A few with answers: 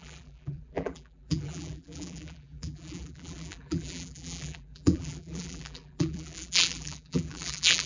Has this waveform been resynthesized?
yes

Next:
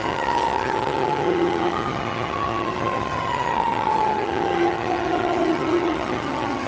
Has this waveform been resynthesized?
yes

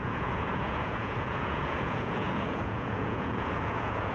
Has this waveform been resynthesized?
yes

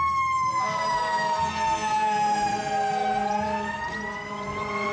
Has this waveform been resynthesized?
yes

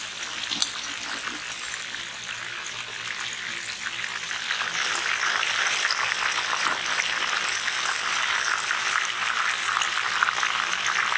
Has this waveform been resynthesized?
no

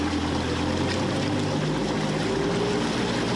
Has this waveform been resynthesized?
no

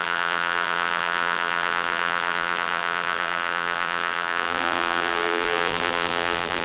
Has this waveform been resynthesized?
yes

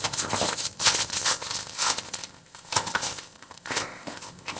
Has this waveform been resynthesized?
yes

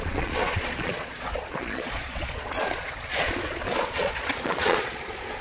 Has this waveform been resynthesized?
yes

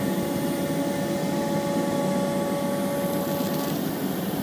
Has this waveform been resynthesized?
no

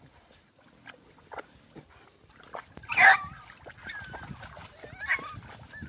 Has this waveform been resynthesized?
no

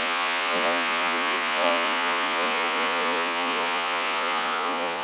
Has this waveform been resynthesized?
yes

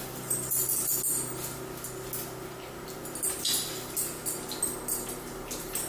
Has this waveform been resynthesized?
no